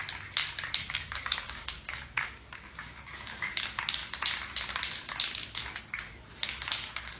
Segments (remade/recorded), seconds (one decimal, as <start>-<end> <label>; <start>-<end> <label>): 0.0-0.8 recorded; 0.8-4.0 remade; 4.0-5.8 recorded; 5.8-7.2 remade